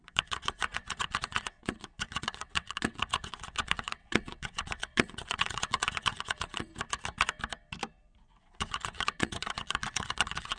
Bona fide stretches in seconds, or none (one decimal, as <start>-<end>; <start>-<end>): 6.7-8.4